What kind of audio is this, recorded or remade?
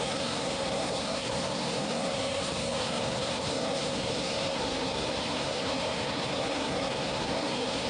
remade